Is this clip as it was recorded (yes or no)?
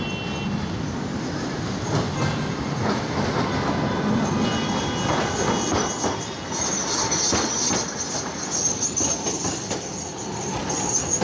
yes